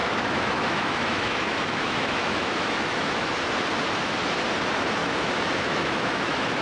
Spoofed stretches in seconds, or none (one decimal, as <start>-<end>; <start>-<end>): 0.0-3.4; 5.0-6.6